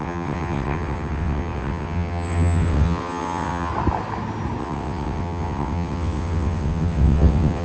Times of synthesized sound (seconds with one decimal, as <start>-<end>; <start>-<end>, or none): 0.0-3.7; 4.6-7.6